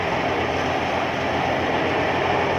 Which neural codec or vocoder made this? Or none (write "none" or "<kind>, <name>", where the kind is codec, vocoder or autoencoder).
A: none